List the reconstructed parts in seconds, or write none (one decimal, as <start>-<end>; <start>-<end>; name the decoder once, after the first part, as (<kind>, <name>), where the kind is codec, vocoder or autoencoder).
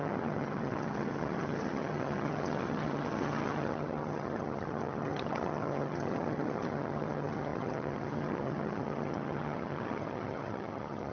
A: 0.0-11.1 (vocoder, HiFi-GAN)